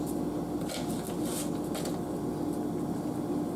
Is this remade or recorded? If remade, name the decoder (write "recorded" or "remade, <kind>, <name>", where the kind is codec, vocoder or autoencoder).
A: recorded